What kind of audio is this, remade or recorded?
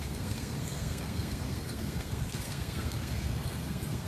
remade